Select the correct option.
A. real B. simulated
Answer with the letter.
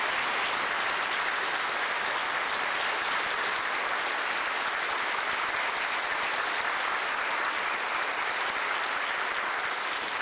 A